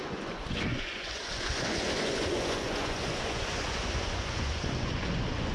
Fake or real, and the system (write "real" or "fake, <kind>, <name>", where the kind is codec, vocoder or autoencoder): fake, vocoder, Vocos